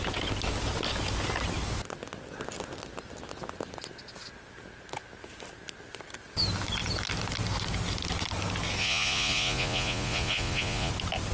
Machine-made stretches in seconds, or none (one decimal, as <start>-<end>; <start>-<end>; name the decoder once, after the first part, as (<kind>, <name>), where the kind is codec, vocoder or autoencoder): 8.8-10.9 (vocoder, Vocos)